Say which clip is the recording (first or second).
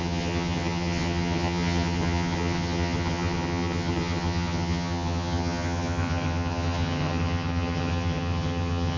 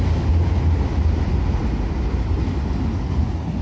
second